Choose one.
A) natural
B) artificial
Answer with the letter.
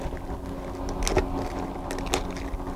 A